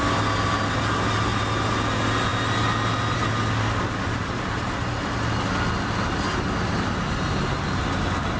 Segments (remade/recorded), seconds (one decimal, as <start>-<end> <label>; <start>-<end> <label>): 0.0-8.4 recorded